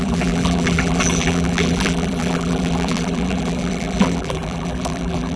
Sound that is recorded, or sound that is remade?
remade